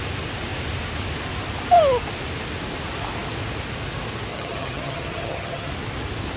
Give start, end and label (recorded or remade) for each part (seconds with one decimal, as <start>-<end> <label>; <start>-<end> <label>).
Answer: 0.0-4.3 recorded; 4.3-5.7 remade; 5.7-6.4 recorded